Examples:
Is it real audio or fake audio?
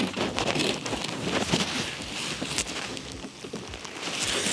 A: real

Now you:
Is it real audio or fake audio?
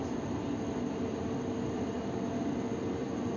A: real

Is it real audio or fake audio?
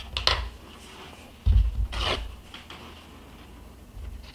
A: real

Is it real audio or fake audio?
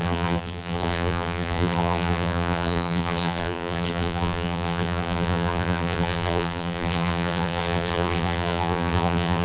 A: fake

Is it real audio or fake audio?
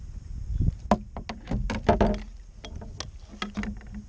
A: real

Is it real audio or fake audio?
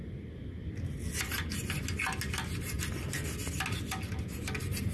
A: real